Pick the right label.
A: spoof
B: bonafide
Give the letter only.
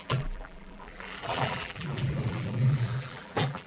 A